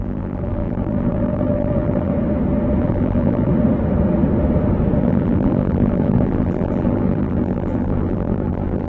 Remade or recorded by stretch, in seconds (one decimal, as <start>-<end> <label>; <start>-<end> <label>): 0.0-2.1 remade; 2.1-2.8 recorded; 2.8-3.5 remade; 3.5-5.0 recorded; 5.0-8.9 remade